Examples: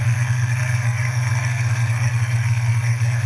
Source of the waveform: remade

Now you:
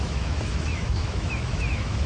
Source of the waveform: remade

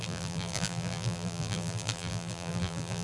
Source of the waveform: remade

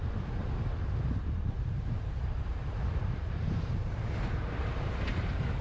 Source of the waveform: remade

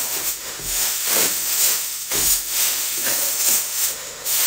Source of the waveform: remade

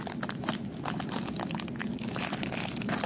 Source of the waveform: recorded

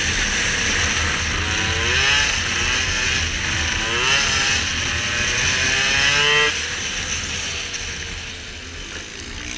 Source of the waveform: recorded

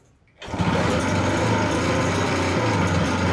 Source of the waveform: recorded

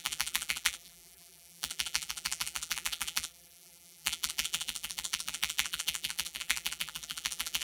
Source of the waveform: remade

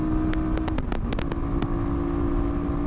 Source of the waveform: recorded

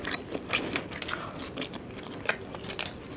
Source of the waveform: recorded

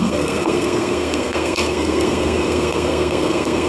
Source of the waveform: remade